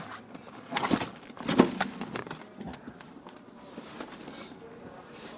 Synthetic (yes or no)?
no